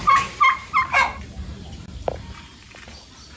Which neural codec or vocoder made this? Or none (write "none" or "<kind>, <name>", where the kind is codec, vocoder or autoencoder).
none